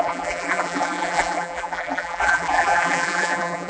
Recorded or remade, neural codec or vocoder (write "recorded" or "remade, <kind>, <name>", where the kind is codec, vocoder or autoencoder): remade, vocoder, BigVGAN v2